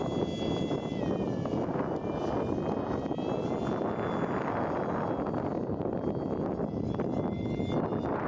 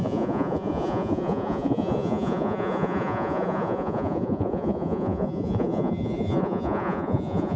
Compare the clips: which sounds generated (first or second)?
second